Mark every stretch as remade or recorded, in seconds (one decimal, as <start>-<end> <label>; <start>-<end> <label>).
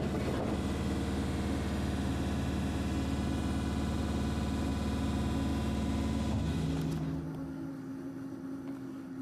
0.0-9.2 recorded